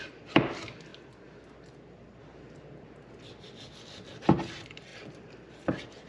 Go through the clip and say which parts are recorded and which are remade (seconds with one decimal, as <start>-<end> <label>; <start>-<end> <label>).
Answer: 0.0-6.1 recorded